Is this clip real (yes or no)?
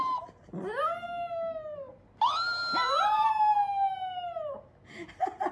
yes